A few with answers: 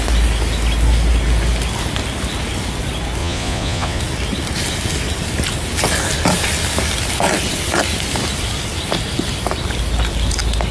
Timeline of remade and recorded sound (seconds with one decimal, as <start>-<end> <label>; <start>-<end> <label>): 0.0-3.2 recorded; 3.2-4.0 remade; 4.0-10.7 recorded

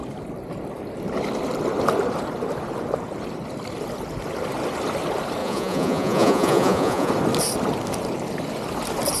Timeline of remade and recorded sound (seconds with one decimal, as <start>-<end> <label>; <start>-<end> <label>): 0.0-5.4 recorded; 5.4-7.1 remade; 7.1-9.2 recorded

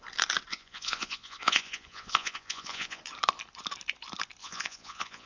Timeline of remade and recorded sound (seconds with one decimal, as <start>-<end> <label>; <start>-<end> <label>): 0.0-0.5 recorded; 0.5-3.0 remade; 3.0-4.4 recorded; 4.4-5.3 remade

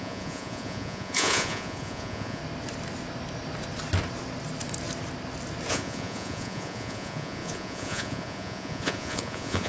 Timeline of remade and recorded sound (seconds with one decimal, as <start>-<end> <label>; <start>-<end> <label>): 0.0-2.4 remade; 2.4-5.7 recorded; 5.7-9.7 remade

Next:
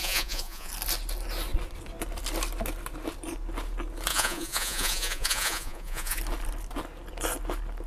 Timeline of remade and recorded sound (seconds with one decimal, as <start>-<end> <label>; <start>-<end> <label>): 0.0-0.7 remade; 0.7-4.1 recorded; 4.1-6.2 remade; 6.2-7.9 recorded

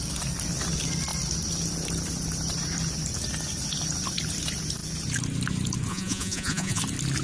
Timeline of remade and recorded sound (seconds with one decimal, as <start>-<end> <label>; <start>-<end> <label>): 0.0-5.9 recorded; 5.9-6.8 remade; 6.8-7.2 recorded

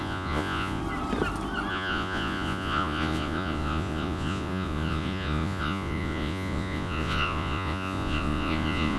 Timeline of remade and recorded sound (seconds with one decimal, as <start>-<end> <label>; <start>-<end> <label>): 0.0-0.8 remade; 0.8-1.7 recorded; 1.7-9.0 remade

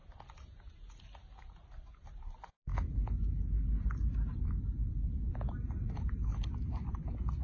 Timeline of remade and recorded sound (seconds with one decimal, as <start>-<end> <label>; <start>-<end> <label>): 0.0-7.4 recorded